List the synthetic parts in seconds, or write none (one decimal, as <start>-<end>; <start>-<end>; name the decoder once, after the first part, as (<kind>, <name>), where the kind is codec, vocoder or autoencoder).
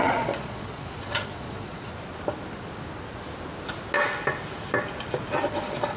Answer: 0.0-1.9 (vocoder, Vocos); 5.5-6.0